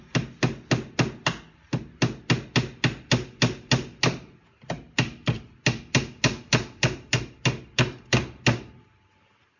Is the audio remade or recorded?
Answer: recorded